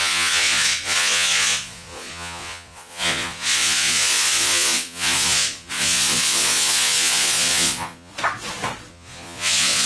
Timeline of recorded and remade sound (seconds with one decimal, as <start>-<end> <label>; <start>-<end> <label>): 0.0-8.1 remade; 8.1-8.9 recorded; 8.9-9.9 remade